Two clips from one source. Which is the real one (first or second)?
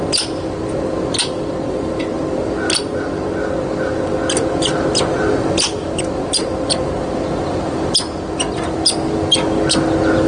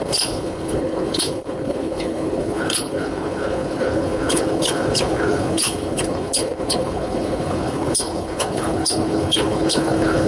first